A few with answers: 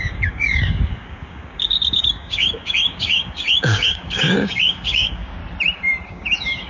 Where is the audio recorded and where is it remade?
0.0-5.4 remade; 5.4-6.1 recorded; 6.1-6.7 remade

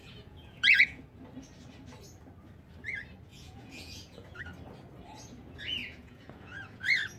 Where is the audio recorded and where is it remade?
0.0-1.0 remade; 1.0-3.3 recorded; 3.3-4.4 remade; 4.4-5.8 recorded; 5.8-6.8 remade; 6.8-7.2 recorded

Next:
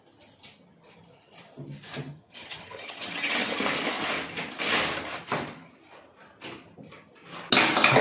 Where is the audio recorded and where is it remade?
0.0-2.1 recorded; 2.1-3.6 remade; 3.6-8.0 recorded